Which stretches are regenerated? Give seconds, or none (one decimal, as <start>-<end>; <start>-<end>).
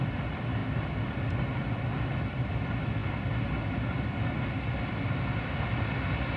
none